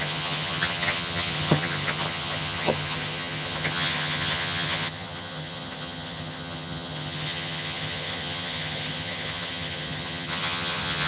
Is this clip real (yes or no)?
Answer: no